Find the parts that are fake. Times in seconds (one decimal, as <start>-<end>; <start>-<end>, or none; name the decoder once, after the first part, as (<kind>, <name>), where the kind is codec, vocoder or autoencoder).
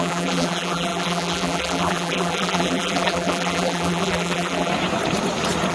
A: 0.0-4.7 (vocoder, BigVGAN v2)